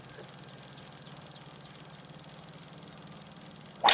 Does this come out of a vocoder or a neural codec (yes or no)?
no